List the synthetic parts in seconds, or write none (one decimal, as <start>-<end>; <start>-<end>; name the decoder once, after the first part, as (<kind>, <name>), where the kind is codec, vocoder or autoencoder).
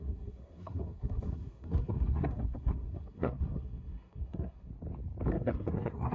0.0-4.7 (codec, SNAC); 5.3-6.1